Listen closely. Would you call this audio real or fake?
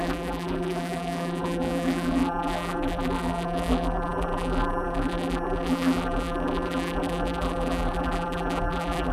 fake